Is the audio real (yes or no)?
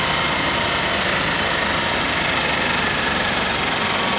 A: no